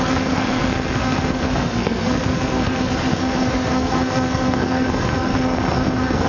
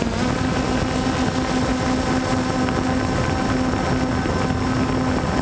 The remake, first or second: first